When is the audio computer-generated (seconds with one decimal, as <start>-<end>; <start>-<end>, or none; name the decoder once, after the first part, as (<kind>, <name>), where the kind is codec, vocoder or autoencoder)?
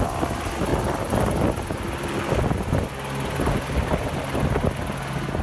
none